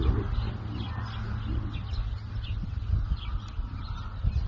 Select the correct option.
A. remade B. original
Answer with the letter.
B